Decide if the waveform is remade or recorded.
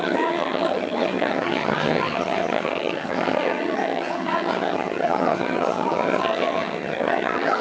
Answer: remade